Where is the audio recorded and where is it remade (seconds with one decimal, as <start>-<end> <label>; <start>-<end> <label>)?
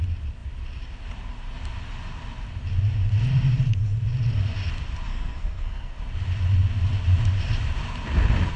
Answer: 0.0-5.1 recorded; 5.1-6.0 remade; 6.0-8.6 recorded